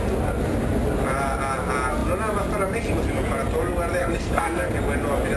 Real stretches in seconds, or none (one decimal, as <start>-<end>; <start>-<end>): 0.0-4.0; 4.7-5.4